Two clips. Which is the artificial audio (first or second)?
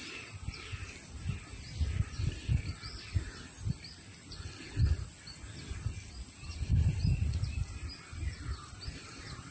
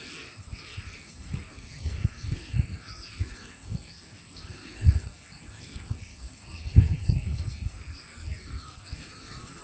second